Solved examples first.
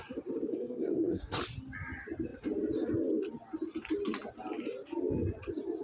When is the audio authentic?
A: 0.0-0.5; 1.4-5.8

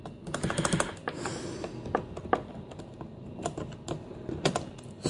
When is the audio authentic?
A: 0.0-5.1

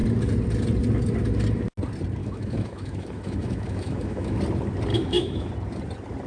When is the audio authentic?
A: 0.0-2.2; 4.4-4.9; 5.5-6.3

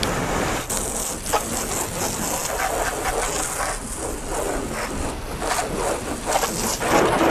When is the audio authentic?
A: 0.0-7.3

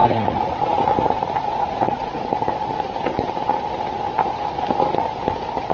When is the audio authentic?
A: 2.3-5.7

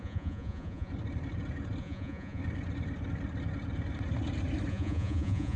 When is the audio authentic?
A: 0.9-1.8; 2.4-4.7

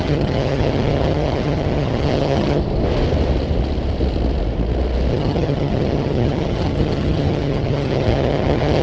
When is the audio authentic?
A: 2.6-5.1